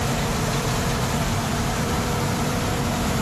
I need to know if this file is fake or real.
fake